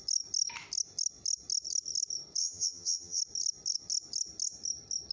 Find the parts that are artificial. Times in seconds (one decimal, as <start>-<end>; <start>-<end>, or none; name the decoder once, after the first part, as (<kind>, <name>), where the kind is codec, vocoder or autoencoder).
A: 2.4-3.2 (vocoder, HiFi-GAN)